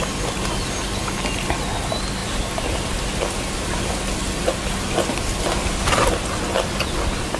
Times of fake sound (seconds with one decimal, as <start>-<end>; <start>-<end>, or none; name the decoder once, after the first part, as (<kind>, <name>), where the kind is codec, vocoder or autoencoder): none